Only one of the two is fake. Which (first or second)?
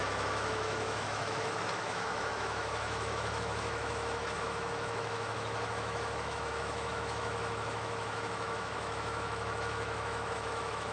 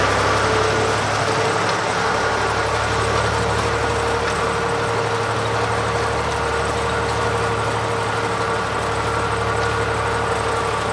first